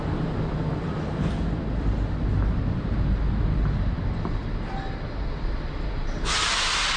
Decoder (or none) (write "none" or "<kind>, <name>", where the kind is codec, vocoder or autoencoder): none